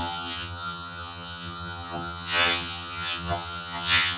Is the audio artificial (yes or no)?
yes